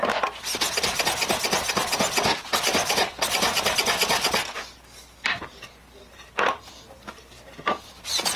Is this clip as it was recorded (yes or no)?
yes